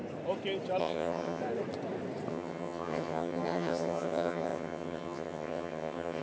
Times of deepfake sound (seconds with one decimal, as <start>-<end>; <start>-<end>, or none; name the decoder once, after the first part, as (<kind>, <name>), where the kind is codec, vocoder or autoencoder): 0.8-1.4 (vocoder, HiFi-GAN); 2.3-6.2